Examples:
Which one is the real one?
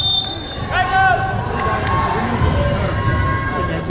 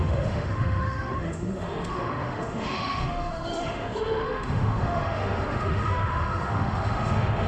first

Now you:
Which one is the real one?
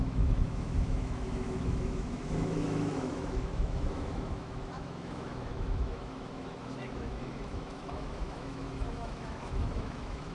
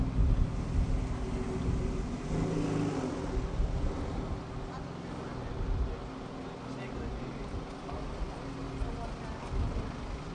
second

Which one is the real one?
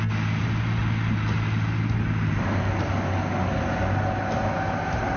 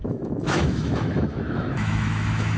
first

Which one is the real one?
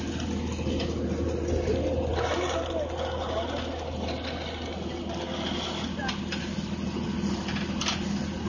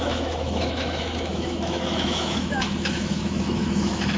first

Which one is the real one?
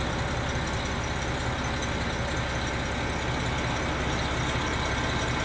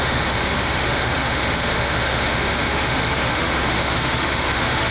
first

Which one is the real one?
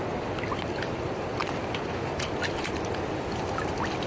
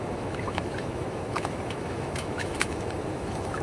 first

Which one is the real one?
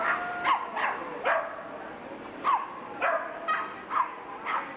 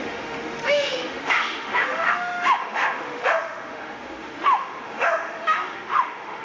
first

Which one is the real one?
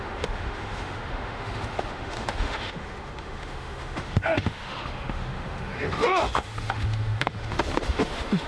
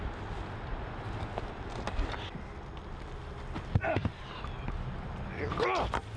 second